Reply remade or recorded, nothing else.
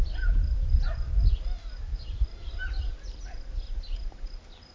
recorded